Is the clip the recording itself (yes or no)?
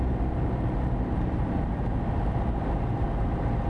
yes